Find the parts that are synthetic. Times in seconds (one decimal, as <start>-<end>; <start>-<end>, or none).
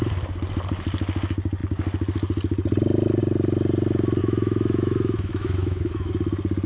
4.2-6.1